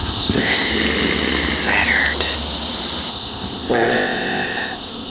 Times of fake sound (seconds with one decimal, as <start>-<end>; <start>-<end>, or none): 0.0-0.7; 3.1-5.1